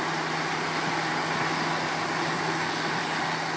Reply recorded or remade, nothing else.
recorded